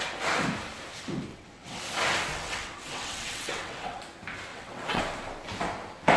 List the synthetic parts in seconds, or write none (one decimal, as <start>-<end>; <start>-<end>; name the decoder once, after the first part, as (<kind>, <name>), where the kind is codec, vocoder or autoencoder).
1.3-1.8 (vocoder, WaveNeXt); 2.3-4.0; 4.5-5.0

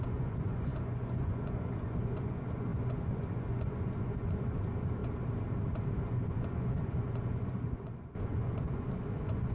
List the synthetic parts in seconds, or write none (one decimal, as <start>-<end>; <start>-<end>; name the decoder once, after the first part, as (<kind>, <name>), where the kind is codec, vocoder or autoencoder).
0.0-5.0 (vocoder, Vocos); 6.0-9.5

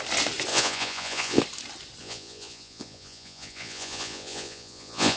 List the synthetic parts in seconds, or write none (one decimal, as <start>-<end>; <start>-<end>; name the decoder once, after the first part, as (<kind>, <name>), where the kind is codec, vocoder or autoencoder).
0.5-1.4 (vocoder, Vocos); 2.0-5.2

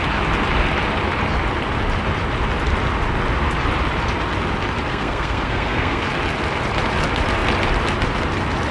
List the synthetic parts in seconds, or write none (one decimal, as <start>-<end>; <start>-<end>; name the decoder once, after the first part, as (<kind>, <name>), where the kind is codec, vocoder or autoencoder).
4.9-6.0 (codec, SNAC)

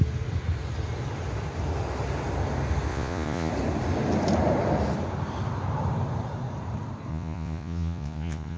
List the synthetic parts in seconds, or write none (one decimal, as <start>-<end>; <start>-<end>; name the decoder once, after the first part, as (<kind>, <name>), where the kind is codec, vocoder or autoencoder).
2.9-3.5 (vocoder, Vocos); 7.1-8.6

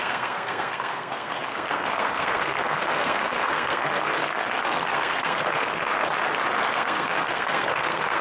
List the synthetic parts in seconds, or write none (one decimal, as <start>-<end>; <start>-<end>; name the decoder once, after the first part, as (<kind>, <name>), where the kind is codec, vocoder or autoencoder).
0.0-5.9 (codec, SNAC); 6.7-8.2

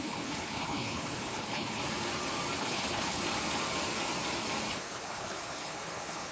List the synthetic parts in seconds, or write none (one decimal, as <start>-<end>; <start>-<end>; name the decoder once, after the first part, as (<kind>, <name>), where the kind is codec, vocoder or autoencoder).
0.0-1.8 (codec, HILCodec); 2.6-3.2; 4.7-6.3

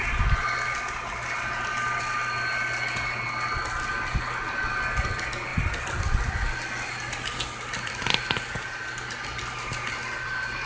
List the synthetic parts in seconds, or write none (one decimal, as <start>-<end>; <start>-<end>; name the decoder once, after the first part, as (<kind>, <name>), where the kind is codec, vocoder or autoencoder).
5.5-6.2 (vocoder, BigVGAN v2)